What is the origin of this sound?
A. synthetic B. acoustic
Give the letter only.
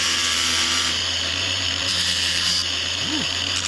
A